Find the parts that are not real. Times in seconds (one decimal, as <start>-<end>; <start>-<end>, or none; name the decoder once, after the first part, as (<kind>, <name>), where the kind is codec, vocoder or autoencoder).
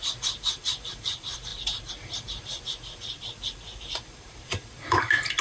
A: 0.0-5.4 (vocoder, BigVGAN v2)